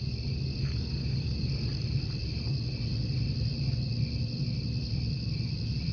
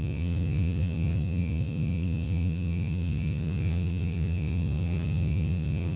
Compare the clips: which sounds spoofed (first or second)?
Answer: second